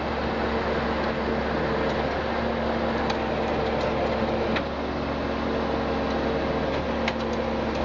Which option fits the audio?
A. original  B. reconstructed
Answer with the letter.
A